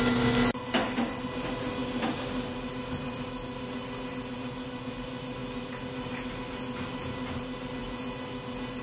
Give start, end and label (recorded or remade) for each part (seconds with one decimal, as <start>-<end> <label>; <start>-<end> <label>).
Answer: 0.0-8.8 recorded